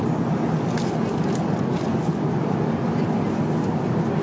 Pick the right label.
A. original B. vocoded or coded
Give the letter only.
A